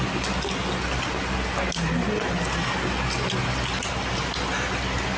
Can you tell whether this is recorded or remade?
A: recorded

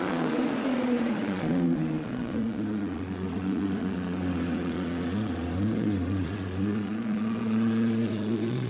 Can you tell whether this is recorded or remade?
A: remade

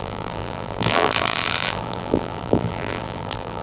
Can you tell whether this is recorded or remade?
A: remade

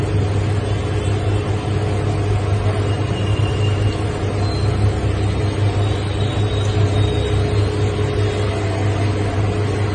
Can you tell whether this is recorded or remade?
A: recorded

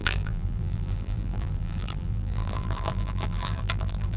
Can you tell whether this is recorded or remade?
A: remade